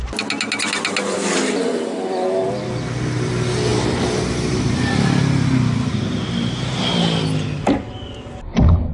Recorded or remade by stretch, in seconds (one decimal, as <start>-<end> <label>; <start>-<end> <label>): 0.0-8.9 recorded